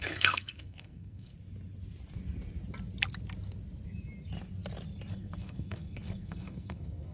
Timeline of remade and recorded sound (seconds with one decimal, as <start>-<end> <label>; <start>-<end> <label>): 0.0-1.3 remade; 1.3-5.1 recorded; 5.1-7.1 remade